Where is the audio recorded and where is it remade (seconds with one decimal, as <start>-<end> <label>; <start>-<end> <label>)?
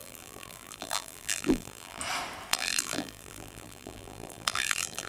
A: 0.0-2.0 remade; 2.0-2.5 recorded; 2.5-5.1 remade